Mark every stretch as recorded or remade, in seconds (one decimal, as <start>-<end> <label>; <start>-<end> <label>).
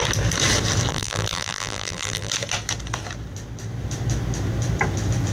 0.0-0.9 recorded; 0.9-2.3 remade; 2.3-5.3 recorded